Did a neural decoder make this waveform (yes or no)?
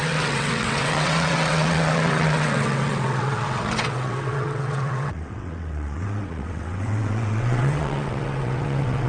yes